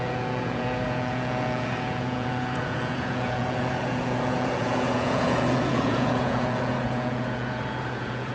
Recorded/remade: remade